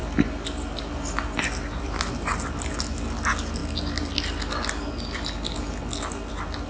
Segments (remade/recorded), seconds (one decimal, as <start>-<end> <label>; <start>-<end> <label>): 0.0-6.7 recorded

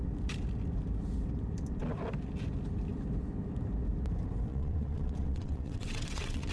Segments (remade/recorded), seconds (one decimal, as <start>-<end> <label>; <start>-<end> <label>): 0.0-4.5 recorded; 4.5-6.5 remade

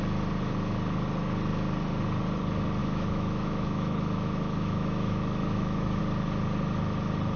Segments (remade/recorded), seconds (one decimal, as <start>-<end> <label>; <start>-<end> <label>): 0.0-2.8 recorded; 2.8-6.0 remade; 6.0-7.4 recorded

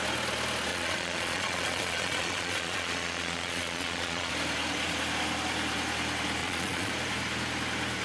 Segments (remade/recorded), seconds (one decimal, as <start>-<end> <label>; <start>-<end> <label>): 0.0-0.7 recorded; 0.7-4.3 remade; 4.3-6.4 recorded; 6.4-6.9 remade; 6.9-8.0 recorded